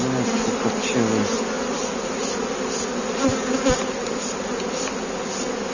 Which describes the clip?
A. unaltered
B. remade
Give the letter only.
A